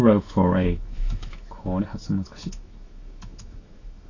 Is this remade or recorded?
remade